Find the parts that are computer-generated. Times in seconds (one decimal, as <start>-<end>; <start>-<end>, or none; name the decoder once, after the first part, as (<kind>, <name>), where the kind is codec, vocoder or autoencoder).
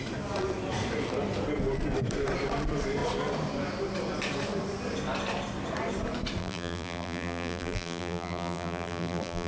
6.4-9.5 (vocoder, BigVGAN v2)